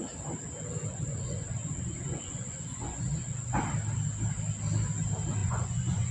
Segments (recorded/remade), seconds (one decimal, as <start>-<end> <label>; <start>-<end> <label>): 0.0-0.9 recorded; 0.9-3.6 remade; 3.6-5.4 recorded; 5.4-6.1 remade